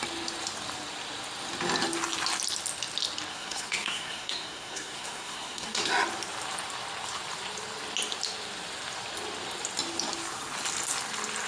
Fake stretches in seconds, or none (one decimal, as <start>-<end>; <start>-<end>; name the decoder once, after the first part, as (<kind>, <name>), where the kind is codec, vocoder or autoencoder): 3.3-5.9 (codec, SNAC)